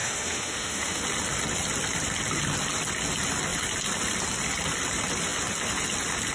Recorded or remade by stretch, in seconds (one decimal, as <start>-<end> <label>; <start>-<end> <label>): 0.0-1.0 remade; 1.0-6.3 recorded